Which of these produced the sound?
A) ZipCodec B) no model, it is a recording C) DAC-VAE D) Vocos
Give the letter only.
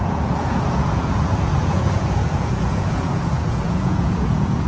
D